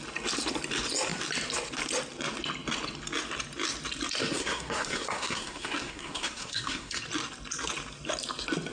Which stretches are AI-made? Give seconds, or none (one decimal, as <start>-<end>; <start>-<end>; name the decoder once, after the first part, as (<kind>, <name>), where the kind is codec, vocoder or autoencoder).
4.2-7.0 (codec, SNAC)